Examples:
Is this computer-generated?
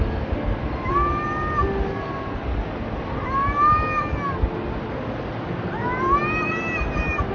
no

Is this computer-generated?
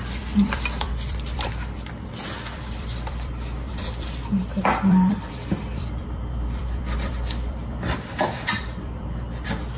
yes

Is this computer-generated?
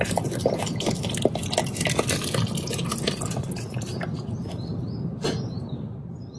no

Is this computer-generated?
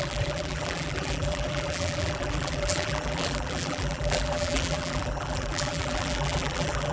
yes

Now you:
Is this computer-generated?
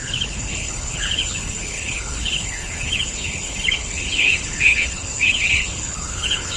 yes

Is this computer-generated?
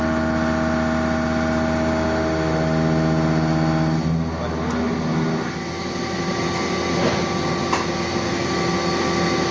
no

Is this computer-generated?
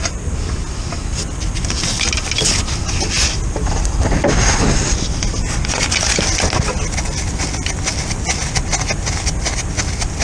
no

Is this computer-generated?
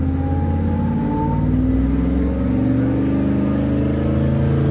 no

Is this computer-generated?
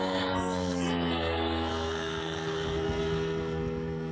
yes